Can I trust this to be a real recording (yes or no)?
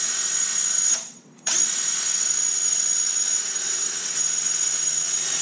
no